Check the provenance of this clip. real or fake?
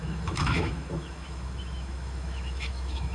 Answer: fake